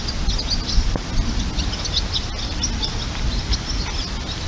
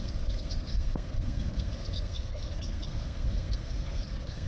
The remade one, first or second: second